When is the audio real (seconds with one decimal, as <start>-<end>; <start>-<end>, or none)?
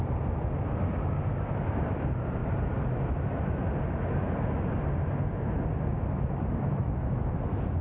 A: 0.0-7.8